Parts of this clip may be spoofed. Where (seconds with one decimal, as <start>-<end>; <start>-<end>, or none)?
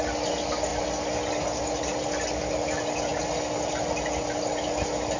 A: none